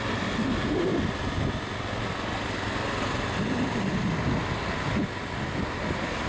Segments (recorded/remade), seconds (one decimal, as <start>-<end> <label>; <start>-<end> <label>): 0.0-6.3 recorded